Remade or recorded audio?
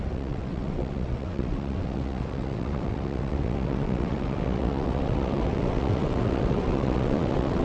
remade